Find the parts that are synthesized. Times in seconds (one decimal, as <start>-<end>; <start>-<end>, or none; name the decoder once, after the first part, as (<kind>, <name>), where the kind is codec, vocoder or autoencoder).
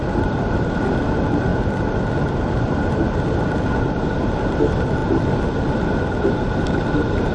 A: none